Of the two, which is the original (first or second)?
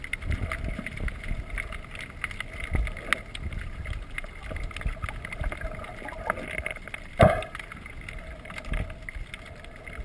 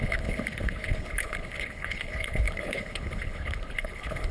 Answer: first